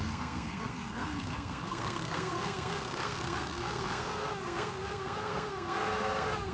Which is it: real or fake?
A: fake